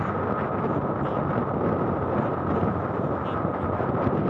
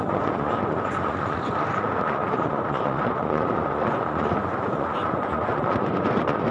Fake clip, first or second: second